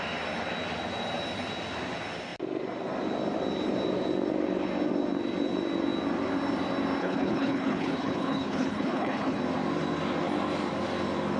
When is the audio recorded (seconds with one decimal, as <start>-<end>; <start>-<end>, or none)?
0.0-7.0; 9.4-11.4